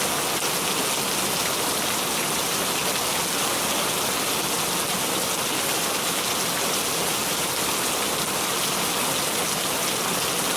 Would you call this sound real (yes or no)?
yes